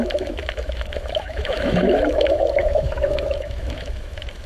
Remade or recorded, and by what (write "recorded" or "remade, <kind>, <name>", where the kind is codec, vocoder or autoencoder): remade, autoencoder, DAC-VAE